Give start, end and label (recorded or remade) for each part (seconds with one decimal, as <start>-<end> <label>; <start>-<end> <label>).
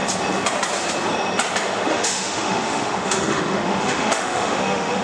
0.0-1.9 recorded; 1.9-5.0 remade